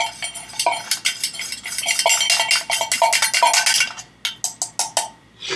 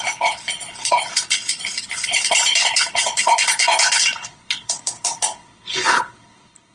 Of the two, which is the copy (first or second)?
second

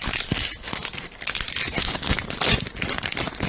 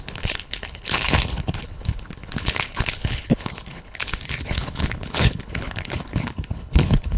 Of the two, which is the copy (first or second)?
second